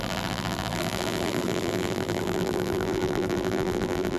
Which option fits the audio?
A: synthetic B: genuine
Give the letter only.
A